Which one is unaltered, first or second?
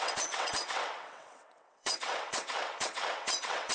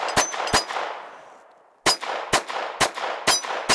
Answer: second